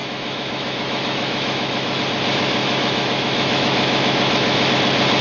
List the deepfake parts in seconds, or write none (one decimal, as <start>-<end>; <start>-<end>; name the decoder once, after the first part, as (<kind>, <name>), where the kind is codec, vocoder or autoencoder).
0.0-2.0 (autoencoder, DAC-VAE); 2.6-4.7